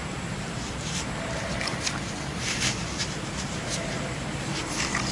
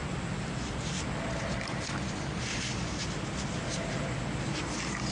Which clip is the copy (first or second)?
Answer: first